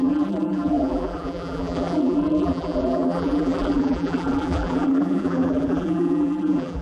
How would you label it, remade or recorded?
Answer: remade